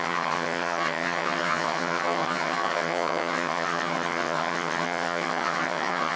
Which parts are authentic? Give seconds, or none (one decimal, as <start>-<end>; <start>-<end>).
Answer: none